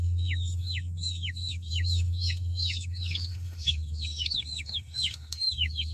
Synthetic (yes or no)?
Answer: yes